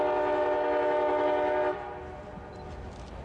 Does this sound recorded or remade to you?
recorded